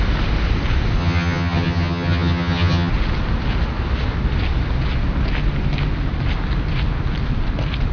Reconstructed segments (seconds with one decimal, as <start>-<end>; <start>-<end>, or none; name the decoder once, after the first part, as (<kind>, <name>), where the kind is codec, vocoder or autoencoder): 1.0-2.9 (vocoder, HiFi-GAN)